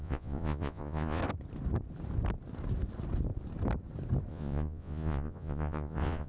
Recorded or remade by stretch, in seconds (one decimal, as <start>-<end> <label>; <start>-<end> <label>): 0.0-1.2 remade; 1.2-4.3 recorded; 4.3-6.3 remade